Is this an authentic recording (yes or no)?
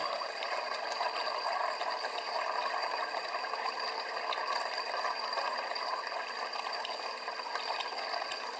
yes